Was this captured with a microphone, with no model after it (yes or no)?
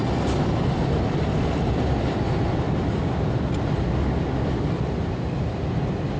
yes